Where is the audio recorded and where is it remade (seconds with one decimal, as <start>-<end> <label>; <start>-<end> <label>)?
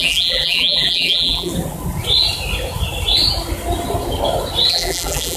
0.0-1.5 remade; 1.5-4.7 recorded; 4.7-5.4 remade